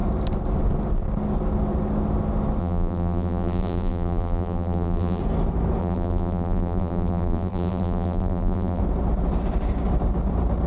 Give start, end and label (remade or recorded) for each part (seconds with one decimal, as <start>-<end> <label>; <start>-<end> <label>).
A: 0.0-2.6 recorded; 2.6-5.2 remade; 5.2-5.8 recorded; 5.8-8.8 remade; 8.8-10.7 recorded